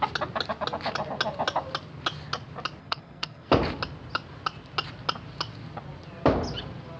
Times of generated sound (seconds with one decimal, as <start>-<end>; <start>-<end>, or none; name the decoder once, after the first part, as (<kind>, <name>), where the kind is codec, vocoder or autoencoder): 2.8-3.5 (codec, SNAC)